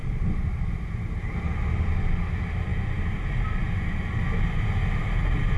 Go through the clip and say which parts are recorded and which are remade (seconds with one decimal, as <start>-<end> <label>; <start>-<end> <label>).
0.0-5.6 recorded